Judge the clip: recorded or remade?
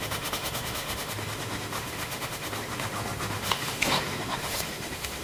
remade